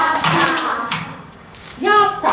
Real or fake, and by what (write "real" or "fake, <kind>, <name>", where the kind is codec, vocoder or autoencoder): fake, codec, DAC